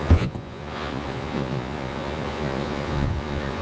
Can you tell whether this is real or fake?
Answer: fake